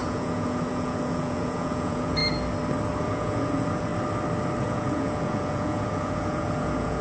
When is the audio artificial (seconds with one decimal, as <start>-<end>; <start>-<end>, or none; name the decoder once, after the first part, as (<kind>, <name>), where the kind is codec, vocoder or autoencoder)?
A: 0.0-2.2 (vocoder, Vocos); 3.0-3.9; 4.6-7.0